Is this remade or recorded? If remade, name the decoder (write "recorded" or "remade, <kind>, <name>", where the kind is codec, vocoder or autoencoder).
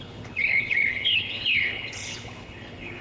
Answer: remade, codec, HILCodec